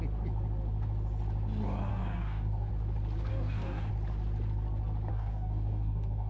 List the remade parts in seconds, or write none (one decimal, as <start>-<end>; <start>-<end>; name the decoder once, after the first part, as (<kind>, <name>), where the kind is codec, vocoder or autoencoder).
1.9-2.7 (codec, DAC); 3.3-3.9; 5.1-6.3